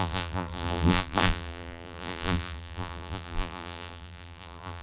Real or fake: fake